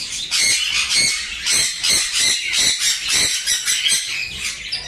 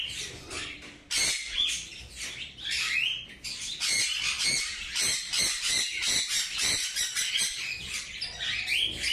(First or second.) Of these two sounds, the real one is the first